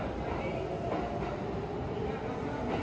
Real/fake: real